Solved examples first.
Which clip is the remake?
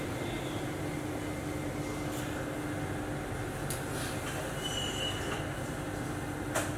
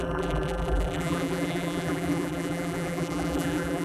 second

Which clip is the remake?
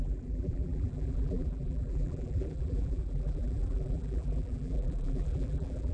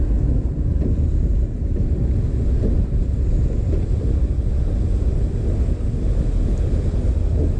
first